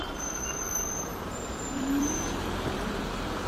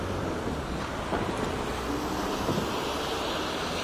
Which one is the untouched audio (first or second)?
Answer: second